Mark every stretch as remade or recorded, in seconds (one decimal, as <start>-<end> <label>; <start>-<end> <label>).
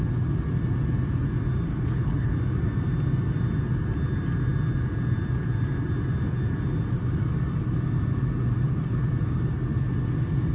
0.0-1.7 recorded; 1.7-2.3 remade; 2.3-10.5 recorded